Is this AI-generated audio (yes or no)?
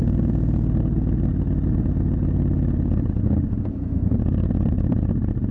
no